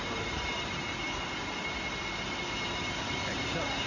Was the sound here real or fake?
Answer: real